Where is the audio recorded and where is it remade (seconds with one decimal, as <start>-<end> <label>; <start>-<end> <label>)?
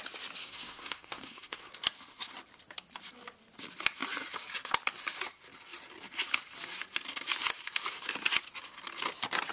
0.0-0.4 recorded; 0.4-1.7 remade; 1.7-9.5 recorded